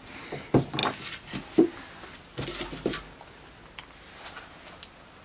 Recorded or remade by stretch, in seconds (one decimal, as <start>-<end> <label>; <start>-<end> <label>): 0.0-5.2 recorded